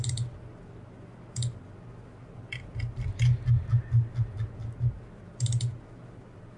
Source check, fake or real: real